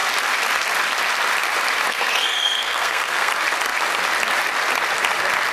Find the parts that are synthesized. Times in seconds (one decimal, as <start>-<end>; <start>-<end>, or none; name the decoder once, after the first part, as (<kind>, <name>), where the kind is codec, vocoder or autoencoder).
1.9-3.3 (codec, SNAC)